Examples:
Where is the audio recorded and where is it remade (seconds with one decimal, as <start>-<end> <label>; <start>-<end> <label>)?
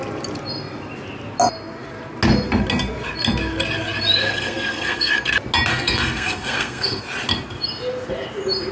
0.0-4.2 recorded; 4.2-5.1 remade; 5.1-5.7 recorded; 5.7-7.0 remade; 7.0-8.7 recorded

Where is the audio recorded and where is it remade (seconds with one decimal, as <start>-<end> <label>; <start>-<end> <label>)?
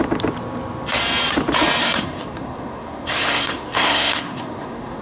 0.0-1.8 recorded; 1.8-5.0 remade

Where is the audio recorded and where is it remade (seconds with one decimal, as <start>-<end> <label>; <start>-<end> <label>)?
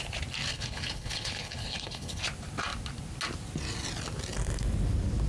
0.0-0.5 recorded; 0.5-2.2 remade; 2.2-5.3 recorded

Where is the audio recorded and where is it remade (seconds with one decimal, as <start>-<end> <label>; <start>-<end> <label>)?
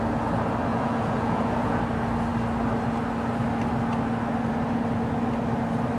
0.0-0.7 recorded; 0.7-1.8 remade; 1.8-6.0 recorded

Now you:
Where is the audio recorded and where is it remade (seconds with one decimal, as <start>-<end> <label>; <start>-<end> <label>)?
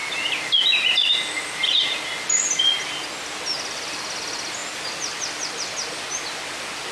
0.0-6.9 recorded